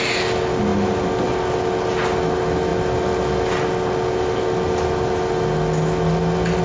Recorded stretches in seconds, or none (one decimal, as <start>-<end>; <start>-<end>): 0.0-6.6